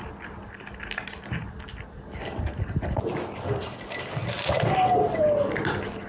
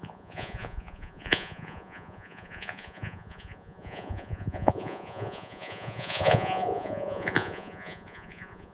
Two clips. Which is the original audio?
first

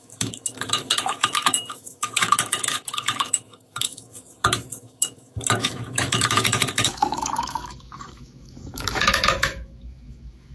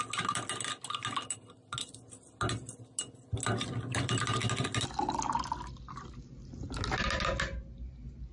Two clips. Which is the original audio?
second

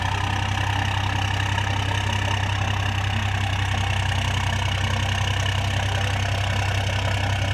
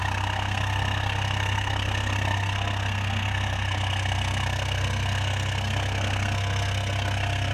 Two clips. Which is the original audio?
first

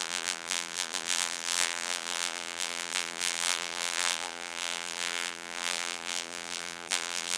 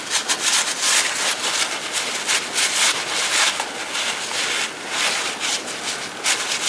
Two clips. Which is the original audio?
second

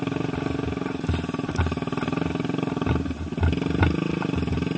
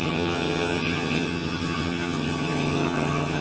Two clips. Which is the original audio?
first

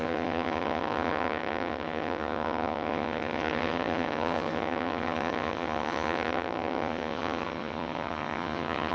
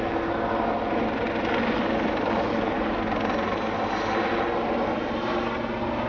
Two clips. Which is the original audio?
second